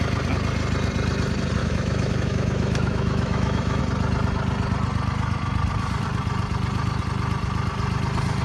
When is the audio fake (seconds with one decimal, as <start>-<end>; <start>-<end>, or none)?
1.6-3.8